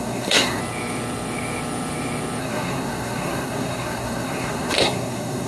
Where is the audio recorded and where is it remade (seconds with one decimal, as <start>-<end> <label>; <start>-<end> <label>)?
0.0-0.6 remade; 0.6-2.4 recorded; 2.4-5.5 remade